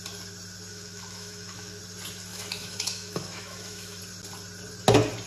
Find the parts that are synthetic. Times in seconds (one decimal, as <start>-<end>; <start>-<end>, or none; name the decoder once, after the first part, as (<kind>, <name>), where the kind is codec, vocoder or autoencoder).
0.7-1.8 (autoencoder, DAC-VAE); 2.3-4.0